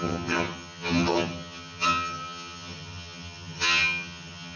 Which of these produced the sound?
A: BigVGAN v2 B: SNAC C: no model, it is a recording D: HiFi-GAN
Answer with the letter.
D